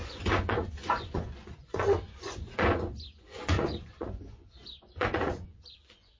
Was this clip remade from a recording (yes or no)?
yes